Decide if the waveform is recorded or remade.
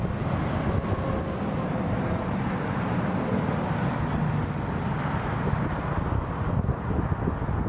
recorded